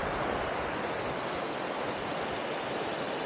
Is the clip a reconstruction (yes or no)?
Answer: no